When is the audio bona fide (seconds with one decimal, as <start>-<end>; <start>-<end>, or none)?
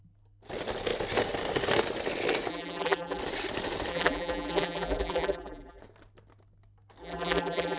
0.0-2.5; 3.2-3.9; 5.8-7.0